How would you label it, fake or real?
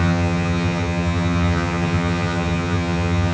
fake